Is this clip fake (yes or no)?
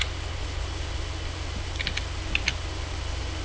no